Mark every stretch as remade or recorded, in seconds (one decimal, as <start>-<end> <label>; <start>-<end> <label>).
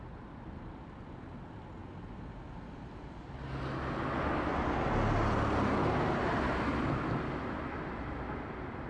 0.0-1.8 recorded; 1.8-2.5 remade; 2.5-8.9 recorded